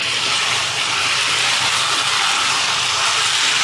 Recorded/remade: remade